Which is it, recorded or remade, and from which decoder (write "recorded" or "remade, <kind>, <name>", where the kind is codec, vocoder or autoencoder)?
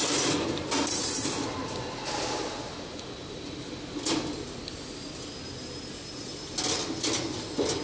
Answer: recorded